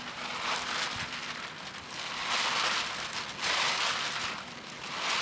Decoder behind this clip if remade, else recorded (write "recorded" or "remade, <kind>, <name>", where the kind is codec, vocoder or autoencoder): recorded